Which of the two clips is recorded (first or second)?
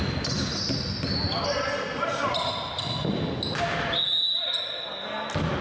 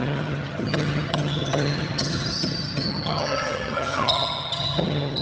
first